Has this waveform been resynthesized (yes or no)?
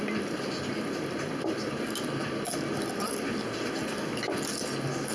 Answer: no